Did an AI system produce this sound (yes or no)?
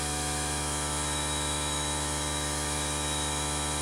yes